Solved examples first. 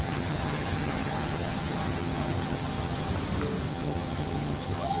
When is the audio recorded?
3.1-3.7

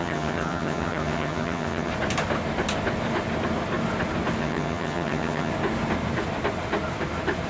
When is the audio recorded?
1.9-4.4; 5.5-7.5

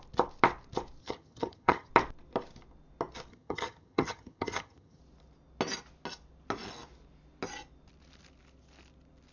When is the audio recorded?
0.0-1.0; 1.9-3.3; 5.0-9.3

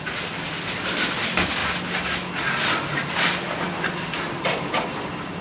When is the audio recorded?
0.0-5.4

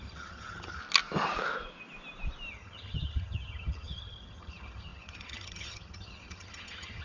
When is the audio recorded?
0.8-2.5

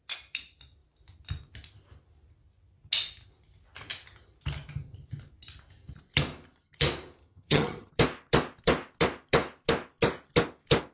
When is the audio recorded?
0.0-7.2; 7.9-10.9

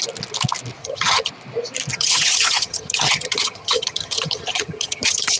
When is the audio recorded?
0.0-0.8; 1.3-1.9